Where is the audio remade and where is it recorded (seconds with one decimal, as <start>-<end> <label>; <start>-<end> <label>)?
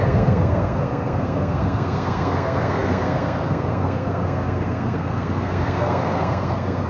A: 0.0-6.9 remade